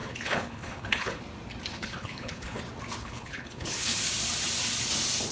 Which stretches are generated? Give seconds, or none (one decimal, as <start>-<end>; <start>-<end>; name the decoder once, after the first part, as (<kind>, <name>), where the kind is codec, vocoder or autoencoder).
0.0-1.2 (codec, HILCodec); 1.7-2.6; 3.0-4.0